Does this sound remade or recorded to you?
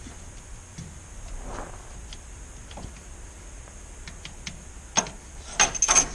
recorded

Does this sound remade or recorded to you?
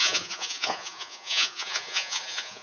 remade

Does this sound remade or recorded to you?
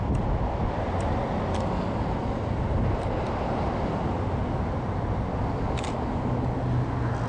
recorded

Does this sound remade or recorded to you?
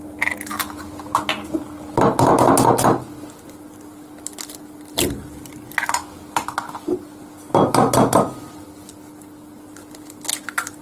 recorded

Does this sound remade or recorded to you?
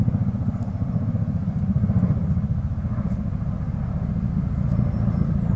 recorded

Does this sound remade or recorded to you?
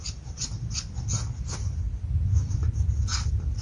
recorded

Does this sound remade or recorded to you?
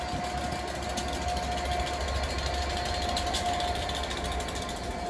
recorded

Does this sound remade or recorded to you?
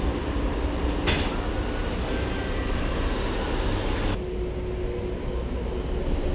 recorded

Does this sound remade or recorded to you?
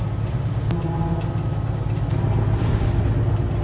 recorded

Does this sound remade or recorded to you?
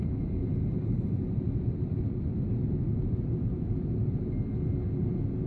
recorded